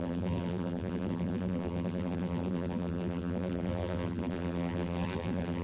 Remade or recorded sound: remade